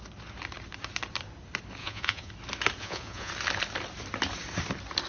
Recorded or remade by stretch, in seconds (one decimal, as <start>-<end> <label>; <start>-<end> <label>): 0.0-1.8 recorded; 1.8-2.3 remade; 2.3-2.8 recorded; 2.8-3.3 remade; 3.3-5.1 recorded